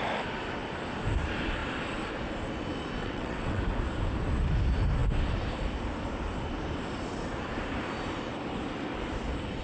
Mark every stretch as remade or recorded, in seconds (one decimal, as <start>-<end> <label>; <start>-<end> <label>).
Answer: 0.0-3.0 recorded; 3.0-3.6 remade; 3.6-9.6 recorded